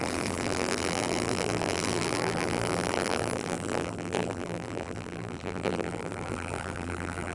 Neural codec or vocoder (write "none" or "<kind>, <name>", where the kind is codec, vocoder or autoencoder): vocoder, BigVGAN v2